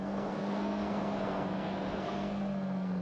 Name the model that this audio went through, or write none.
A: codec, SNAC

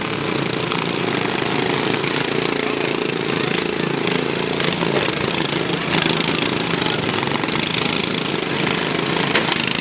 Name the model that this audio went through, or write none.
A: none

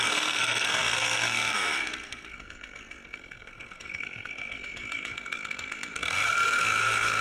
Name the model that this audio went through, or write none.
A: codec, SNAC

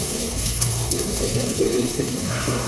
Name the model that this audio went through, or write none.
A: codec, SNAC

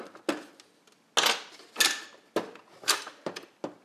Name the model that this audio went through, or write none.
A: none